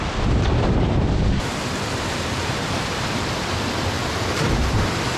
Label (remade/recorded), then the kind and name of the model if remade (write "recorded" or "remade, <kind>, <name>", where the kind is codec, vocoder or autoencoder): remade, vocoder, BigVGAN v2